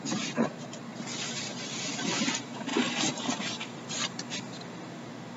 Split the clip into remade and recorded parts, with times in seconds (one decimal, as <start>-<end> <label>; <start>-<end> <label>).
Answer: 0.0-2.7 recorded; 2.7-4.1 remade; 4.1-5.4 recorded